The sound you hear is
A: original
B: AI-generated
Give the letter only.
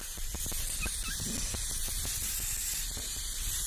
B